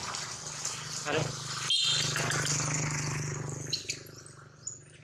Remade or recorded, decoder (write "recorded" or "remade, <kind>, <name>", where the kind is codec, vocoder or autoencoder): recorded